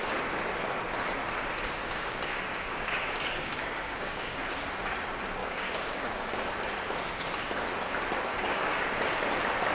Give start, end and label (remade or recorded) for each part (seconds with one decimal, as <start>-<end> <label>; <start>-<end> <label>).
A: 0.0-1.8 recorded; 1.8-4.4 remade; 4.4-5.4 recorded; 5.4-6.5 remade; 6.5-8.3 recorded; 8.3-8.9 remade; 8.9-9.7 recorded